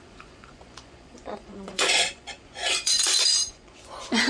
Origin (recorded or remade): remade